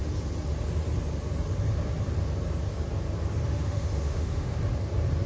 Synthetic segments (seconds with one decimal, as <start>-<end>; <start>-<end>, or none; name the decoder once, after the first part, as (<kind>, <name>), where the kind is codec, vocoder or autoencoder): 3.5-4.6 (autoencoder, DAC-VAE)